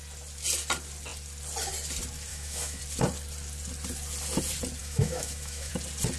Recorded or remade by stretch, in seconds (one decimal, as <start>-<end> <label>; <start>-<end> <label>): 0.0-2.3 recorded; 2.3-2.8 remade; 2.8-4.8 recorded; 4.8-5.7 remade; 5.7-6.2 recorded